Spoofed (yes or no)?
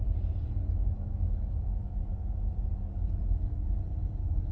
no